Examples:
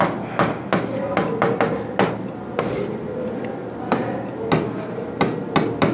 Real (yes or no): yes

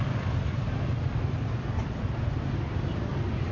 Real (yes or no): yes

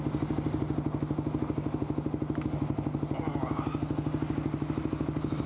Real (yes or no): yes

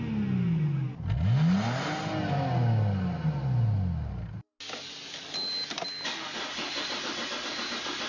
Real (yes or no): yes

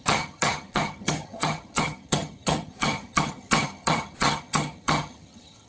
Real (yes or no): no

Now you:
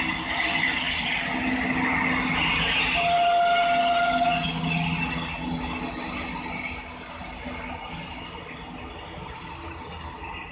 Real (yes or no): yes